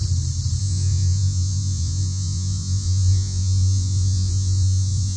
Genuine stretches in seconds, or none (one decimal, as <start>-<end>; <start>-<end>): 0.0-0.6